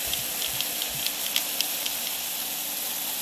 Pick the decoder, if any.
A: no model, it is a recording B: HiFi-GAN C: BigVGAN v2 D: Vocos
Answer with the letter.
A